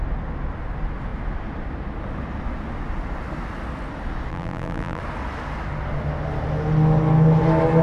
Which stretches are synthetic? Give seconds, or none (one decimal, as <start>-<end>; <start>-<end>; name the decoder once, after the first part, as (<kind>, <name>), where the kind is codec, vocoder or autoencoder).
4.3-5.0 (vocoder, BigVGAN v2)